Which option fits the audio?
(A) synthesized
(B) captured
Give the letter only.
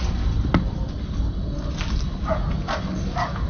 B